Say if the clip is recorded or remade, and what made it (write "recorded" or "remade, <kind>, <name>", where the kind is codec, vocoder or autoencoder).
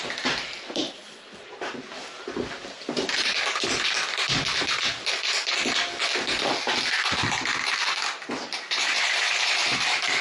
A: recorded